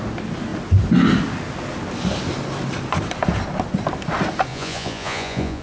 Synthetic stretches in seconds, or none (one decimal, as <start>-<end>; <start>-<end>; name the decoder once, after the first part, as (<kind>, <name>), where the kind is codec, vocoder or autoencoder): 4.5-5.6 (vocoder, Vocos)